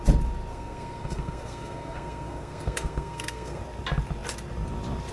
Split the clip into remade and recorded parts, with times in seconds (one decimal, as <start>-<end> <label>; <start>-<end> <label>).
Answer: 0.0-0.5 recorded; 0.5-3.6 remade; 3.6-5.1 recorded